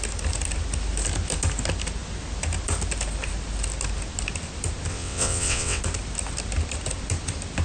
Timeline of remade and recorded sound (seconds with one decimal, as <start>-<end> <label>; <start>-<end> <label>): 0.0-4.9 recorded; 4.9-5.8 remade; 5.8-7.6 recorded